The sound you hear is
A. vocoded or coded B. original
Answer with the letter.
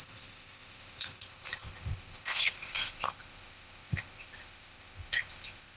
A